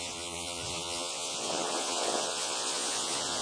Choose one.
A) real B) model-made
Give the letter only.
B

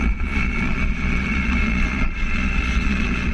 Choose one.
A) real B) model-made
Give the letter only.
B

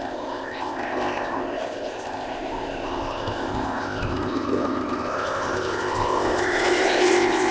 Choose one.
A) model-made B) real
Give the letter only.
A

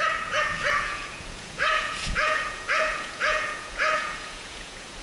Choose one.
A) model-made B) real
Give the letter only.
A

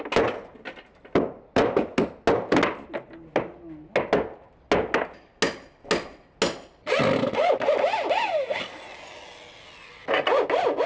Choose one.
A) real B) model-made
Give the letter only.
A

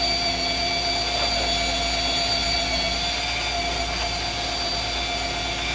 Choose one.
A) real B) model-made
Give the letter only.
A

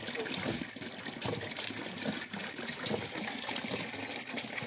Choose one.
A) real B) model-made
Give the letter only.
A